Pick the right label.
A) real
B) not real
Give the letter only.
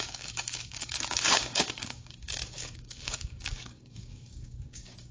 B